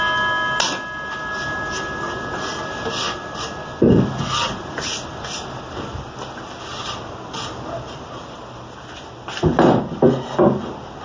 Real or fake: real